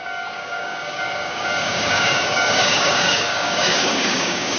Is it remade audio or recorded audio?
remade